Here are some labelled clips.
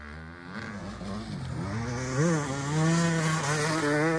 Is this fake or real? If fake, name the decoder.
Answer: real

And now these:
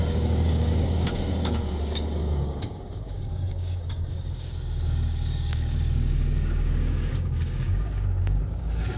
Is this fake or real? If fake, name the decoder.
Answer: fake, codec, DAC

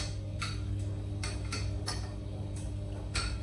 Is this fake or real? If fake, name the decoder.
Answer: fake, codec, DAC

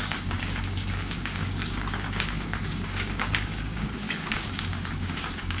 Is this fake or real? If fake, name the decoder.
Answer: fake, codec, DAC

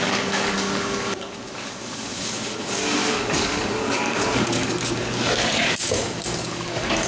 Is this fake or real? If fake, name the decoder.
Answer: fake, codec, DAC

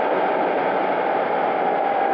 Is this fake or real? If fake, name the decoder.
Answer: real